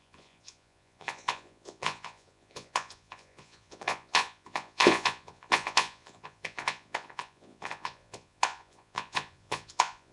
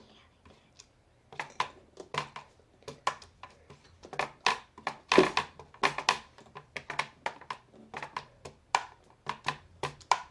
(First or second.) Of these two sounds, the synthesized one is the first